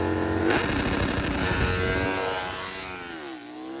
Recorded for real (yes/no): yes